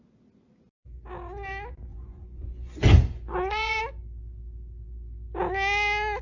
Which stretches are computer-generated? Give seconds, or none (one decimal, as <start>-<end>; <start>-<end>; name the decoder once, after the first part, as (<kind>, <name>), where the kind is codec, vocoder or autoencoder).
1.9-3.8 (vocoder, Vocos)